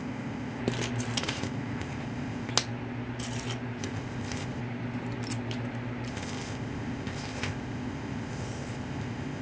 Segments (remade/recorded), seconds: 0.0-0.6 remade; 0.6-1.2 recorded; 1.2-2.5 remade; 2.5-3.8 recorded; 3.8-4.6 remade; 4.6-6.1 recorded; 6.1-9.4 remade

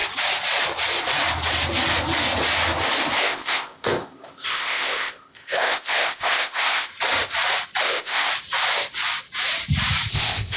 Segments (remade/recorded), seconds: 0.0-3.2 recorded; 3.2-6.9 remade; 6.9-7.8 recorded; 7.8-8.3 remade; 8.3-10.1 recorded; 10.1-10.6 remade